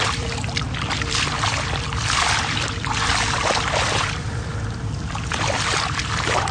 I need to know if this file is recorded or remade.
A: remade